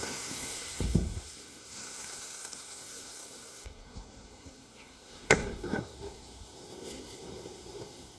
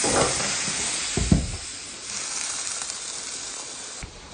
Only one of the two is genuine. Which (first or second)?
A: second